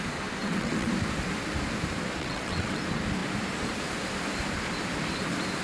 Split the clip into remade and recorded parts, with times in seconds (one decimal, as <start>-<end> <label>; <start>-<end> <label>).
0.0-0.4 recorded; 0.4-0.9 remade; 0.9-2.2 recorded; 2.2-2.8 remade; 2.8-5.6 recorded